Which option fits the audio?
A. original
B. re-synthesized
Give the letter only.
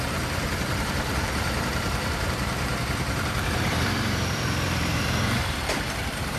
B